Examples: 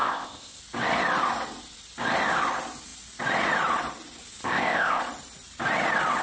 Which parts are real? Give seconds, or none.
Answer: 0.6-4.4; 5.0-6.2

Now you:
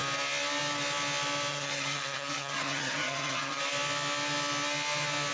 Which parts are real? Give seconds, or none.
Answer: 0.0-1.5; 3.6-5.3

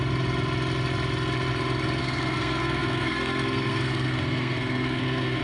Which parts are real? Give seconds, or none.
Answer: 0.0-2.0

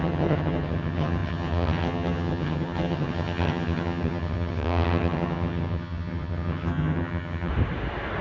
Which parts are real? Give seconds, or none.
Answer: 7.5-8.2

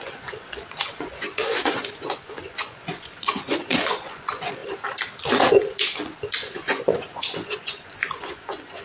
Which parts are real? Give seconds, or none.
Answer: 4.6-6.0

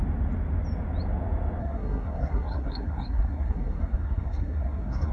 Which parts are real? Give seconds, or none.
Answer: 0.0-1.6

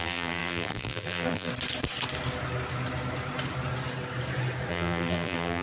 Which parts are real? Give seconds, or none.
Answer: 1.5-4.7

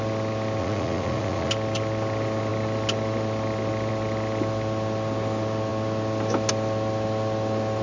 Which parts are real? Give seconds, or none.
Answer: 0.0-0.6; 1.5-7.8